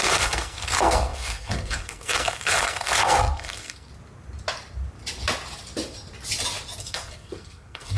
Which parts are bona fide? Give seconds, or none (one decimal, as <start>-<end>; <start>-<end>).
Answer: 3.9-6.8